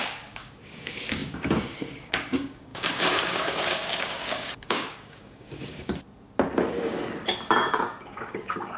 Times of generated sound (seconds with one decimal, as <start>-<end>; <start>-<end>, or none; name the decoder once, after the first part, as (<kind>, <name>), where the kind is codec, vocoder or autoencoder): 0.0-5.9 (codec, DAC); 6.7-8.8